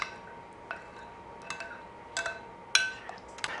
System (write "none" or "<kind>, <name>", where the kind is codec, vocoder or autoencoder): none